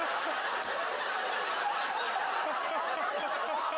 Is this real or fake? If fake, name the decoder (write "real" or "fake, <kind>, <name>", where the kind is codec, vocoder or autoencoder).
real